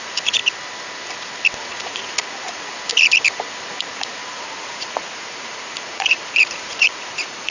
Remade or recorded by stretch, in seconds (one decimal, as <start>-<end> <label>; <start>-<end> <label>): 0.0-0.4 remade; 0.4-1.6 recorded; 1.6-2.7 remade; 2.7-3.8 recorded; 3.8-7.5 remade